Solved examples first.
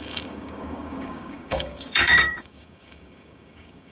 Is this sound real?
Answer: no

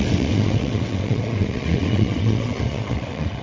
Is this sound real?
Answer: no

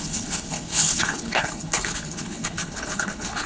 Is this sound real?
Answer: no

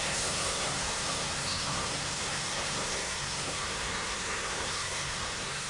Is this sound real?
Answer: no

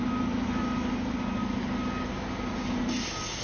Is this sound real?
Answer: yes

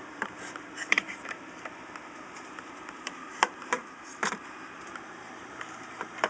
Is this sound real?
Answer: no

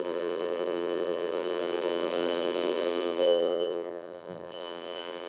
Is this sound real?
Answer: no